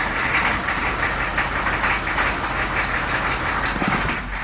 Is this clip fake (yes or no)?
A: no